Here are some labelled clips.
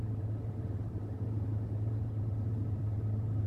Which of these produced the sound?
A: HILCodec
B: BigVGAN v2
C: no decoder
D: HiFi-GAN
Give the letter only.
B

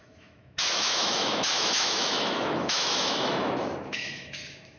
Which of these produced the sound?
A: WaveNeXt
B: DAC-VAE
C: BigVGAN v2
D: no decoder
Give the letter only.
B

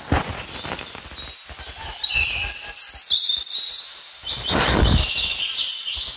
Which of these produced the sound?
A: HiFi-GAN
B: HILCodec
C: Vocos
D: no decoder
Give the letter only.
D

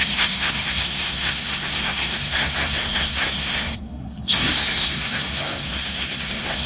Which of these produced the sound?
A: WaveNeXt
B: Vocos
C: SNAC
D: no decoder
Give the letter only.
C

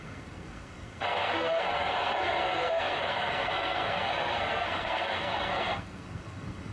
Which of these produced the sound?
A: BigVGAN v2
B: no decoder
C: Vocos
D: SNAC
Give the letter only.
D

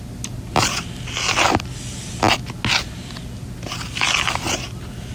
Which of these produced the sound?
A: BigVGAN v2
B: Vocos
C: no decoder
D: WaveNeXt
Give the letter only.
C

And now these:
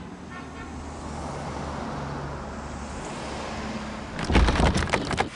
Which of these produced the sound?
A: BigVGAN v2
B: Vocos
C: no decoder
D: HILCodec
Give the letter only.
C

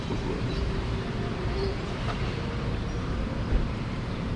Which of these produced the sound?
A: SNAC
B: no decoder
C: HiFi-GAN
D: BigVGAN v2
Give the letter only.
D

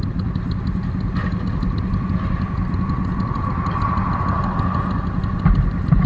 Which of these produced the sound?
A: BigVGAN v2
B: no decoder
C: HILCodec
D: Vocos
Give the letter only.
B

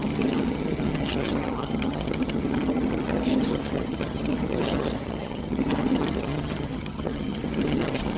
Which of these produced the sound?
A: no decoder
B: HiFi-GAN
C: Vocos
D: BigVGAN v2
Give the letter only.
B